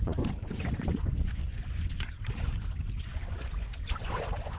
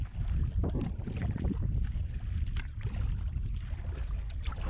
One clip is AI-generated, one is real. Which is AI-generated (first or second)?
first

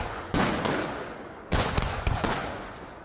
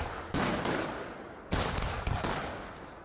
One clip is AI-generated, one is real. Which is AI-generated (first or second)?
first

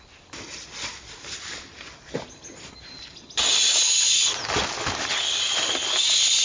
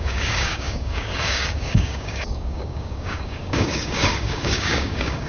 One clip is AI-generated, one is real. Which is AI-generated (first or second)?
second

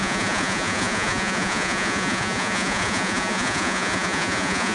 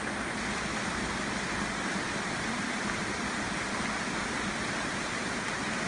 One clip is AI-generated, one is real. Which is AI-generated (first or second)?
first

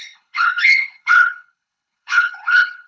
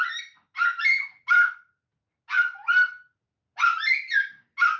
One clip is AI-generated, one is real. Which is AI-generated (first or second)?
first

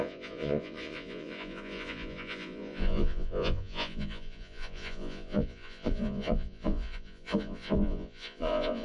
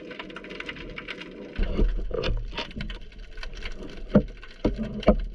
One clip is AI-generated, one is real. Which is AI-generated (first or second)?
first